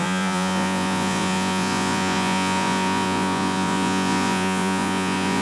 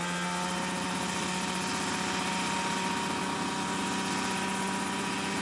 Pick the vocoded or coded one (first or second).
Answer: first